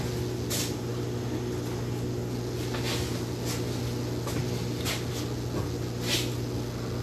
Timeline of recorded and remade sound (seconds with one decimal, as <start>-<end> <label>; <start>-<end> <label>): 0.0-7.0 recorded